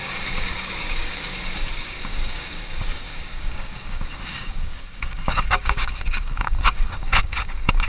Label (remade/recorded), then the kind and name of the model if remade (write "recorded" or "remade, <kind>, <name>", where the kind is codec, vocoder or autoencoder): remade, codec, DAC